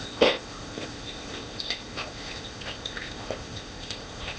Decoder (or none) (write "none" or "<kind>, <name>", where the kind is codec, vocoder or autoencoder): codec, ZipCodec